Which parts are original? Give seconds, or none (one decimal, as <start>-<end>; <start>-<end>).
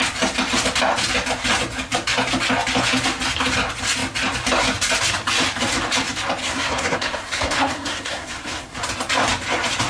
0.0-6.4; 8.8-9.9